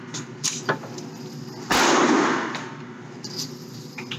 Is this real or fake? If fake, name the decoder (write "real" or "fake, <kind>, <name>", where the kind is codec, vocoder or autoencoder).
real